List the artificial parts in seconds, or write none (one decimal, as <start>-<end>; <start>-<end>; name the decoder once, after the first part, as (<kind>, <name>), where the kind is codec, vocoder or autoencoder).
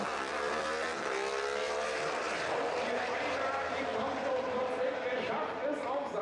1.6-5.3 (vocoder, BigVGAN v2)